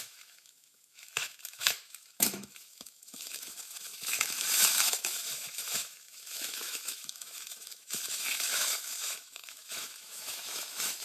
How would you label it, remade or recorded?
remade